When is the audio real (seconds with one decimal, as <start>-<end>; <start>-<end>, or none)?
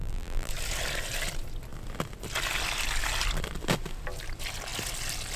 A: 0.5-5.4